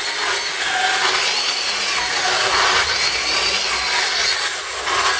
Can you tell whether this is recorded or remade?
recorded